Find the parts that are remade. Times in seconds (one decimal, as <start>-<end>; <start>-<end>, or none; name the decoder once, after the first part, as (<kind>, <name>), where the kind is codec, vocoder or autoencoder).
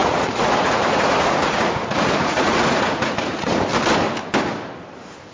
0.0-3.7 (vocoder, Vocos)